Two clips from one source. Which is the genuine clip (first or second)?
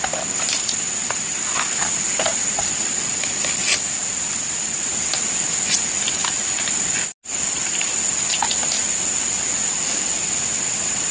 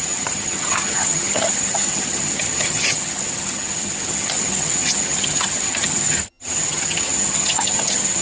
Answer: first